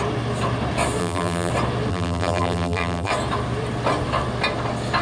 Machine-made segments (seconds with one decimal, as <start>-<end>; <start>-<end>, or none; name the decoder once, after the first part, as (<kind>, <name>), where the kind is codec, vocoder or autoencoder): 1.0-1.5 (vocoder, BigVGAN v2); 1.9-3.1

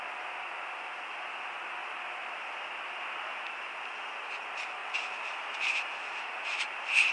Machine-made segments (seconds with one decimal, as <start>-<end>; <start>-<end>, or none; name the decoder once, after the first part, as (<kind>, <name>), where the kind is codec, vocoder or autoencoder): 4.8-7.1 (vocoder, BigVGAN v2)

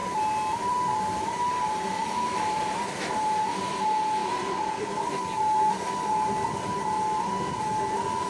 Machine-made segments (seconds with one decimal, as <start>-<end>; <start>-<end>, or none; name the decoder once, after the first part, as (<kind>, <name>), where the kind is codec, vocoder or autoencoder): 0.0-3.4 (vocoder, BigVGAN v2)

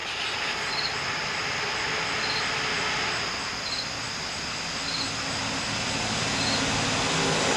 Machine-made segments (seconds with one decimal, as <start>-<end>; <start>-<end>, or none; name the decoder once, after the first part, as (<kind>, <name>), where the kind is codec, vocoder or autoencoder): none